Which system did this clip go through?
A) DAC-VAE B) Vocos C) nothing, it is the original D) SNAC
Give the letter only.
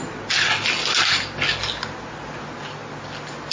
C